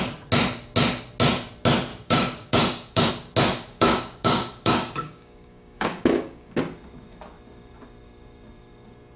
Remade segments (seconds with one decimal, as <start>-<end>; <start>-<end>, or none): 1.9-3.1; 3.7-6.6